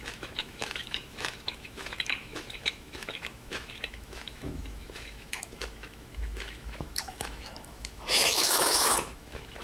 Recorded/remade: remade